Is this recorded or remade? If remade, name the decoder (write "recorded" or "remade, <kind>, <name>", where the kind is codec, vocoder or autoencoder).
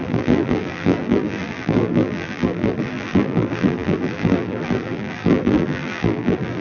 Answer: remade, vocoder, BigVGAN v2